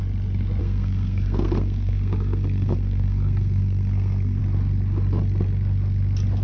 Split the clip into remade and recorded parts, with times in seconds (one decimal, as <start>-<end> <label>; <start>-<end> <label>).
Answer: 0.0-0.6 recorded; 0.6-4.4 remade; 4.4-6.4 recorded